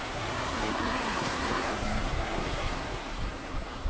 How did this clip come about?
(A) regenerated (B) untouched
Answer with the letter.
A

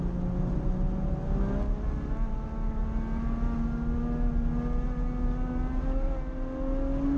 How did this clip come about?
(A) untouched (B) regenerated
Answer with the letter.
A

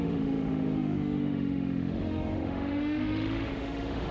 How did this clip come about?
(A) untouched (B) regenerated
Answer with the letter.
B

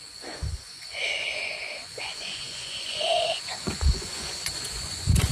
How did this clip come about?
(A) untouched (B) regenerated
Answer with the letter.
B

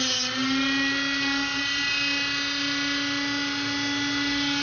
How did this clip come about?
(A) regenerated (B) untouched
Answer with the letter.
B